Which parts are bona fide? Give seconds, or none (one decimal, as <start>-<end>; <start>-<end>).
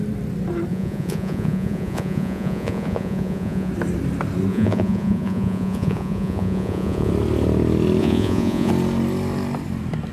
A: 0.0-0.7; 3.7-4.5; 7.1-8.0; 8.7-10.1